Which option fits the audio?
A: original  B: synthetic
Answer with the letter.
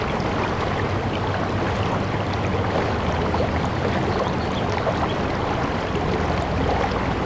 A